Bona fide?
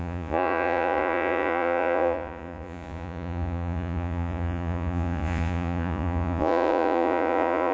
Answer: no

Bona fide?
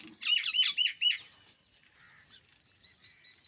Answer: yes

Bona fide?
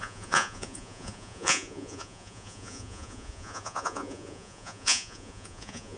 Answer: no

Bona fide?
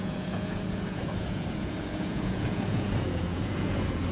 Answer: no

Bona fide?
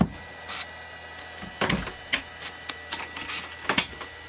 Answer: yes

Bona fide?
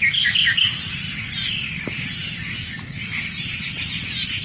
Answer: yes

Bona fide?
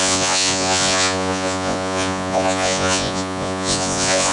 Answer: no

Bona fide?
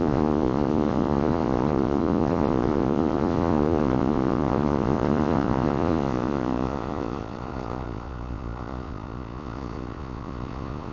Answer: no